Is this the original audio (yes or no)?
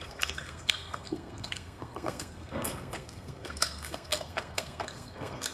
no